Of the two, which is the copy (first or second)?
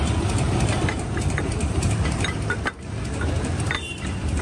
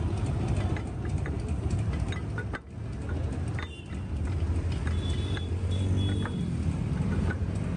first